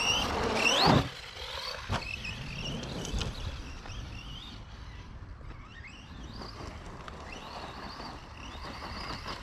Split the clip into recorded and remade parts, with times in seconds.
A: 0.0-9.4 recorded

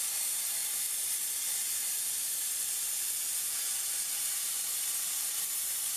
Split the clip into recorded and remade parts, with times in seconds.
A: 0.0-0.6 remade; 0.6-4.2 recorded; 4.2-6.0 remade

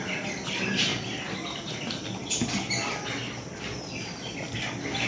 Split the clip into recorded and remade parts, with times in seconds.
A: 0.0-5.1 recorded